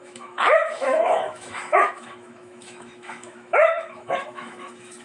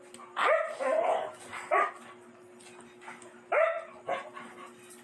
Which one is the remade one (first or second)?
first